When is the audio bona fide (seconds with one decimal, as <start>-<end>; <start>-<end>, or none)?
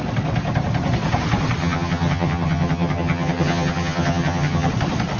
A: 0.0-1.6; 4.7-5.2